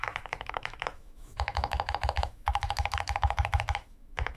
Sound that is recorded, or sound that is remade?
remade